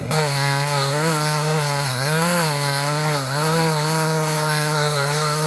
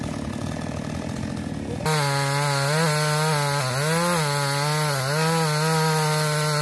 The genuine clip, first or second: second